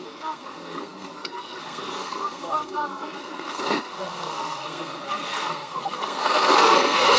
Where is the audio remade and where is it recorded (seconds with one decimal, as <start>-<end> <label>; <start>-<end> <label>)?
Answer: 0.0-7.2 remade